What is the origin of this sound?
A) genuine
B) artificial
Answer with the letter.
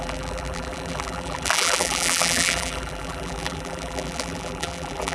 B